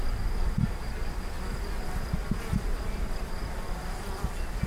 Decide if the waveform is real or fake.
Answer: real